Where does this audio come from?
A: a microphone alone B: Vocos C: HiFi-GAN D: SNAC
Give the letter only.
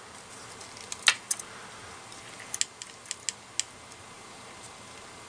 A